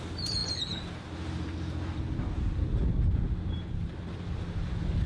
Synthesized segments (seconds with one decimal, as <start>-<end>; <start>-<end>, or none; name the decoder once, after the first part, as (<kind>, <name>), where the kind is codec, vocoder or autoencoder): none